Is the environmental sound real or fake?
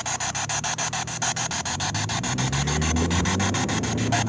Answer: real